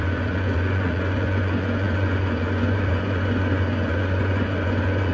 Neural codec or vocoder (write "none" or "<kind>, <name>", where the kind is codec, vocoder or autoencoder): vocoder, Vocos